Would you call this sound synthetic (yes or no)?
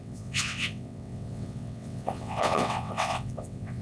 yes